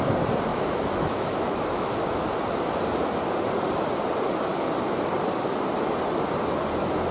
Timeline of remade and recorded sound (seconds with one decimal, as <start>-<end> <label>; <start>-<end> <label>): 0.0-0.5 recorded; 0.5-2.3 remade; 2.3-7.1 recorded